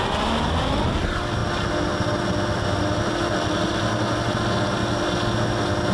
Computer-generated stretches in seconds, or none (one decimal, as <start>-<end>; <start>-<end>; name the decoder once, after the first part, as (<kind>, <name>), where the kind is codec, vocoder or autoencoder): none